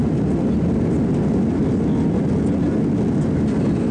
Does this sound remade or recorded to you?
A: recorded